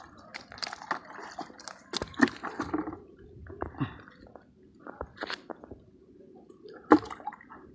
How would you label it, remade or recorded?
recorded